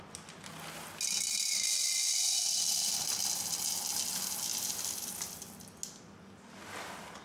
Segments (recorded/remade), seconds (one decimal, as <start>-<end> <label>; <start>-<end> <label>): 0.0-7.2 recorded